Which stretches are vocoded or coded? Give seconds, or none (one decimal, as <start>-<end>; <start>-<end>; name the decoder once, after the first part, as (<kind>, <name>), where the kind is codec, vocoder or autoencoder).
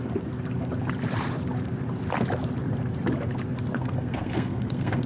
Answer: 3.8-5.1 (codec, SNAC)